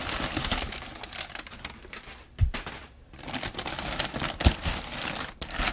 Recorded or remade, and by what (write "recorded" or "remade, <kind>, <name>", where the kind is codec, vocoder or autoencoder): recorded